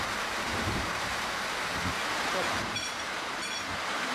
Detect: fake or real fake